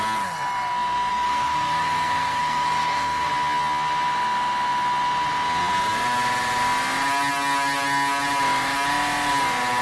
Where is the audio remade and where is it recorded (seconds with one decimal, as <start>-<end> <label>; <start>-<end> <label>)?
0.0-1.1 recorded; 1.1-3.3 remade; 3.3-9.8 recorded